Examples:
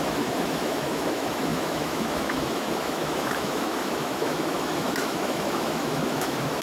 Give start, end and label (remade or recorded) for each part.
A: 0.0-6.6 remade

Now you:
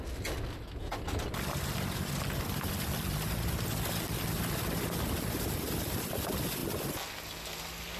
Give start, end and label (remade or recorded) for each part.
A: 0.0-8.0 recorded

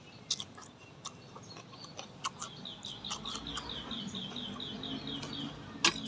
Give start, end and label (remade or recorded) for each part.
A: 0.0-6.1 recorded

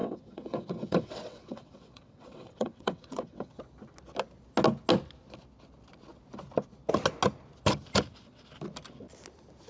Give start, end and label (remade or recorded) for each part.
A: 0.0-3.6 remade; 3.6-9.7 recorded

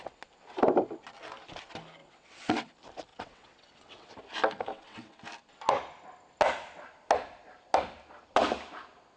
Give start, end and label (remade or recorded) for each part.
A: 0.0-2.0 recorded; 2.0-2.7 remade; 2.7-3.1 recorded; 3.1-4.1 remade; 4.1-4.7 recorded; 4.7-5.2 remade; 5.2-9.2 recorded